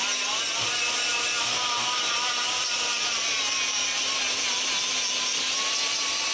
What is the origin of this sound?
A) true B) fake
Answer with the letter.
A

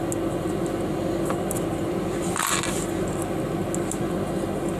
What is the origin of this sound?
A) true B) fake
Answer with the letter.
A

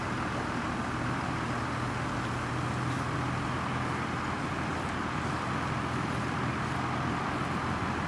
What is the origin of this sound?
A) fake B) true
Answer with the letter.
B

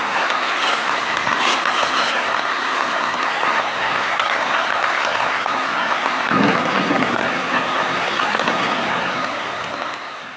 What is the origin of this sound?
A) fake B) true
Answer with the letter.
A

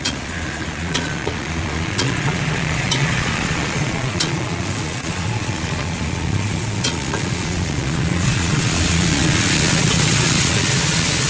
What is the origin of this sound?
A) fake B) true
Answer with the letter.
A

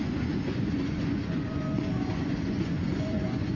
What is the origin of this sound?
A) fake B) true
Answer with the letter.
A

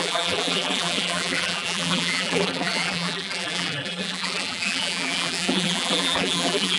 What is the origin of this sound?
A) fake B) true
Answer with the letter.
A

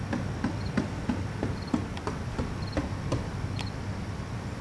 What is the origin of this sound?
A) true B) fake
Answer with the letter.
A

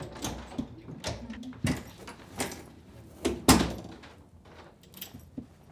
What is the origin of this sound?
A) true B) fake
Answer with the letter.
A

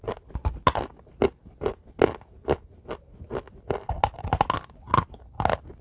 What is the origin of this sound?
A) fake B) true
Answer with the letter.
B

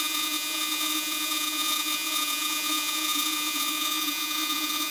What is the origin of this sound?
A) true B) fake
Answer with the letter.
B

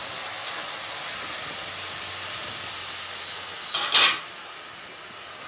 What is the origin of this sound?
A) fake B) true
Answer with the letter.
B